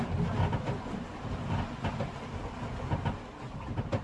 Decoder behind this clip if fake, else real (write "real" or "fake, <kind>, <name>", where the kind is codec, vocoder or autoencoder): real